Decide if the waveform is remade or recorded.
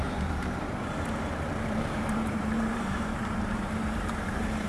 remade